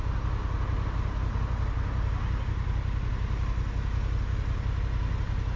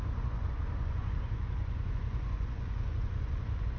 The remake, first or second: second